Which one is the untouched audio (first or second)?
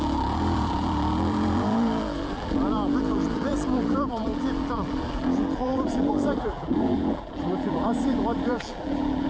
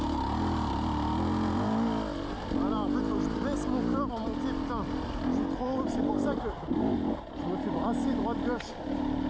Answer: second